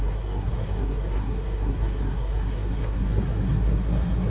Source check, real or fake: fake